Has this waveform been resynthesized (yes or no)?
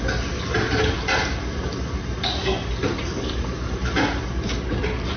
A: no